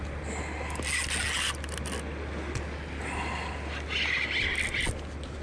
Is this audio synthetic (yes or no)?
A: no